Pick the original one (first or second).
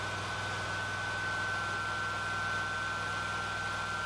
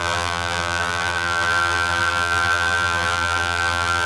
first